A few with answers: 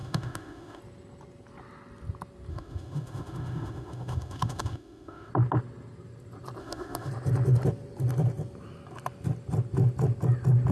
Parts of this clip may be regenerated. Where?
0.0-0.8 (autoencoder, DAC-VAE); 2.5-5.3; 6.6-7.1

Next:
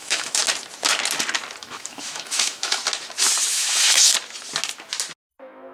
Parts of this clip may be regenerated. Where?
0.0-0.4 (autoencoder, DAC-VAE); 1.6-2.8; 3.5-4.1; 5.3-5.7

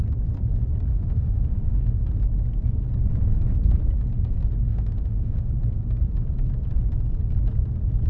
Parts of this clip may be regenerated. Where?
0.9-2.0 (autoencoder, DAC-VAE); 4.7-5.5

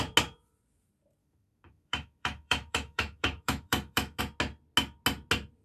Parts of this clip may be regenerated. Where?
1.2-4.2 (autoencoder, DAC-VAE)